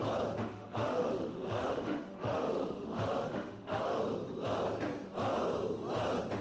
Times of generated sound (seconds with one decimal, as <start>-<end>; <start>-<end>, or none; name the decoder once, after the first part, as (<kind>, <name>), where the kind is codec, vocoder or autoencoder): 0.4-4.0 (autoencoder, DAC-VAE)